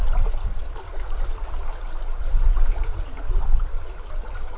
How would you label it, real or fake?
real